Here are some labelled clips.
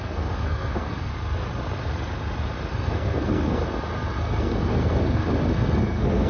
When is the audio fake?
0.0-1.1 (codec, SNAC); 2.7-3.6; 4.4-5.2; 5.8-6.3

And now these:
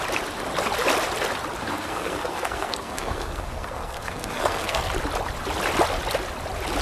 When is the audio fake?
1.7-4.9 (codec, SNAC)

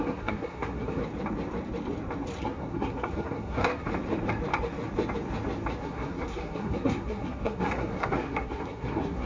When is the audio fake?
0.0-1.0 (codec, SNAC); 2.4-3.9; 5.8-9.3

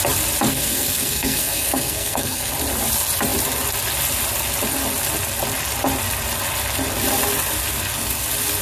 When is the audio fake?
0.5-2.5 (codec, SNAC)

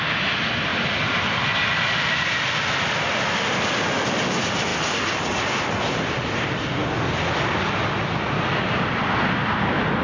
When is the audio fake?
none

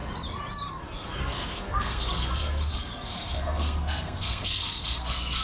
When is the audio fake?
0.8-5.4 (codec, SNAC)

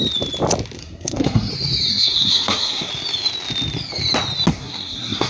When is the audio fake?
0.8-1.5 (codec, SNAC); 1.9-2.9; 4.5-5.3

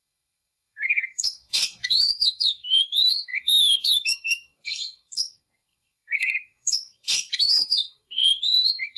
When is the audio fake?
0.0-9.0 (codec, SNAC)